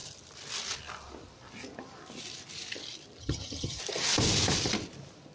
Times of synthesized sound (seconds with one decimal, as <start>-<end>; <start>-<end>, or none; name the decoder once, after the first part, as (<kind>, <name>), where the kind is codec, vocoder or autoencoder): 3.2-3.8 (vocoder, HiFi-GAN)